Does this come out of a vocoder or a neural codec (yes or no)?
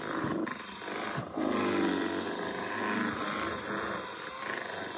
no